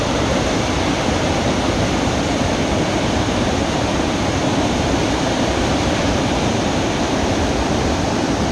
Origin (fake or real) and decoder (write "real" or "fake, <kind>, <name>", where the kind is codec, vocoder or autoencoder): fake, vocoder, BigVGAN v2